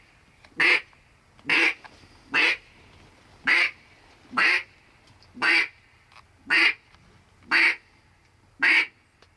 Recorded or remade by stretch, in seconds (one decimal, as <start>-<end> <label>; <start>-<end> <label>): 0.0-1.5 recorded; 1.5-6.2 remade; 6.2-9.4 recorded